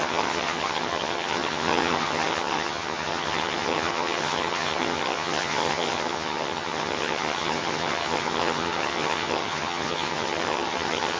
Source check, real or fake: fake